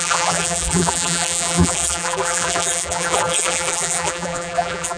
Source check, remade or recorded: remade